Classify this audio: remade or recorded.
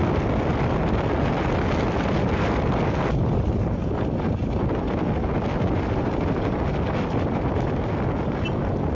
recorded